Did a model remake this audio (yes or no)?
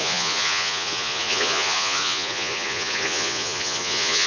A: yes